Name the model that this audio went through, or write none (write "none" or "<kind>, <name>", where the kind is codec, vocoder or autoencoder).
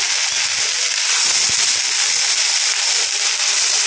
none